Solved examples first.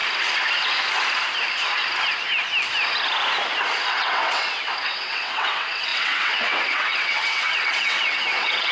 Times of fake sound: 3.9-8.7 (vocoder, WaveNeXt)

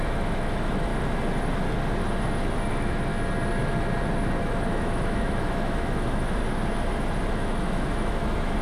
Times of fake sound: 0.0-0.9 (autoencoder, DAC-VAE); 2.7-3.1; 4.4-6.4; 7.3-8.6

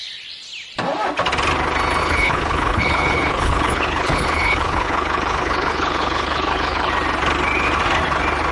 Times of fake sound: 2.0-6.9 (codec, HILCodec)

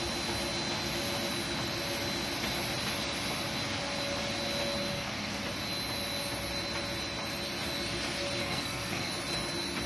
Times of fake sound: 4.9-5.4 (codec, SNAC); 8.4-9.1

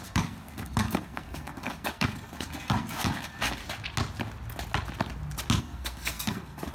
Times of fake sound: 0.0-3.6 (codec, SNAC); 5.6-6.7

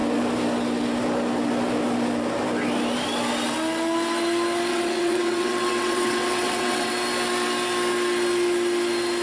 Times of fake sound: 4.7-6.9 (vocoder, WaveNeXt)

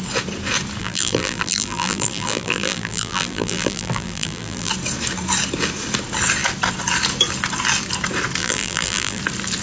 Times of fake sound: 0.8-4.7 (vocoder, BigVGAN v2); 8.4-9.2

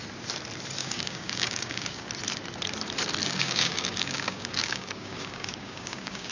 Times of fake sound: 0.8-2.1 (codec, DAC); 3.2-6.3